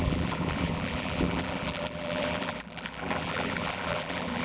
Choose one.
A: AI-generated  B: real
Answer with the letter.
A